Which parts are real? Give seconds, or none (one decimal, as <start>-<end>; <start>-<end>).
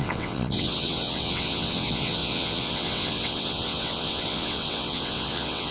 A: none